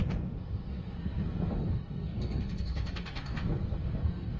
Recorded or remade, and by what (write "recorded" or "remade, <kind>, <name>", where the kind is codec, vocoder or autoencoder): remade, codec, SNAC